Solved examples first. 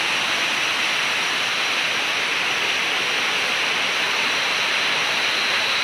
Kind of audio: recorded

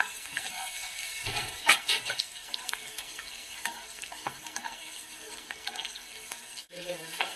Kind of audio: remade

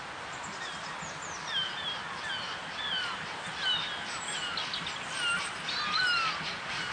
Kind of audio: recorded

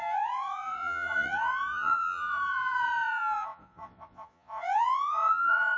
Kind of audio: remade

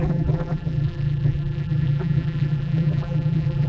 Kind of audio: remade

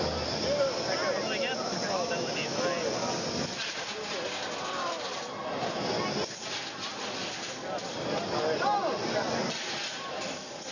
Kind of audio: recorded